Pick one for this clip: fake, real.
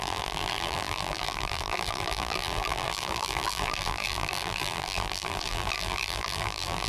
fake